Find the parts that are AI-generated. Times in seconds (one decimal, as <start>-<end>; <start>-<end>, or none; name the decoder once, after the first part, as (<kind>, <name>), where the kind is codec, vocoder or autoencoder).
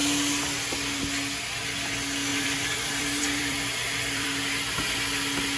0.0-1.0 (vocoder, BigVGAN v2); 2.3-4.4